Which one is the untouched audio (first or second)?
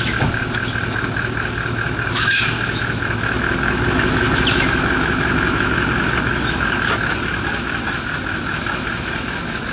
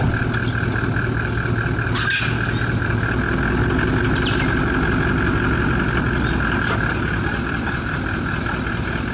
second